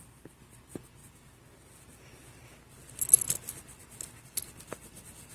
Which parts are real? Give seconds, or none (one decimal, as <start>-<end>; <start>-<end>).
0.0-5.3